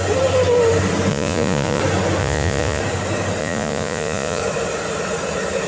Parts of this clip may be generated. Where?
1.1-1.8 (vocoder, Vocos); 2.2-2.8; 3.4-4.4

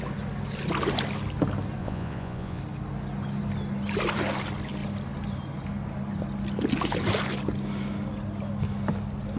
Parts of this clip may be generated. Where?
1.8-2.6 (vocoder, Vocos)

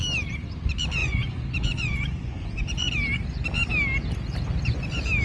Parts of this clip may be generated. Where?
1.0-2.9 (vocoder, Vocos)

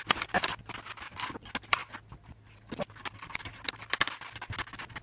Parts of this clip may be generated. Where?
none

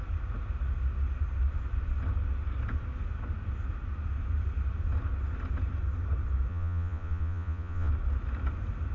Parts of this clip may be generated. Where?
6.5-7.9 (vocoder, Vocos)

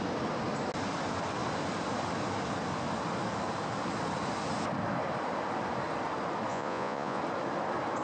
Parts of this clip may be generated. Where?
6.5-7.2 (vocoder, Vocos)

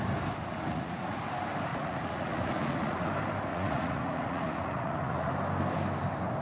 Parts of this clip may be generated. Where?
0.4-1.2 (vocoder, Vocos); 1.7-3.1; 3.5-5.3